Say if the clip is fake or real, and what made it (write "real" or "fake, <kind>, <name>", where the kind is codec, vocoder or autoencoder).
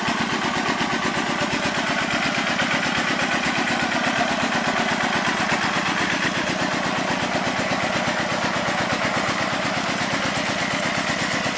real